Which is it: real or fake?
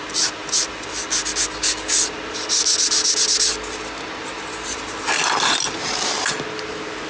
real